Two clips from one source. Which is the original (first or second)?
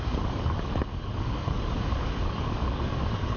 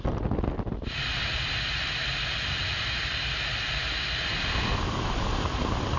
second